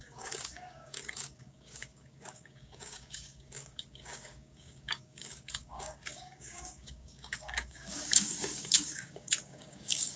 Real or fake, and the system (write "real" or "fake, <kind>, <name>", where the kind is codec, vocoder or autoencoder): fake, codec, DAC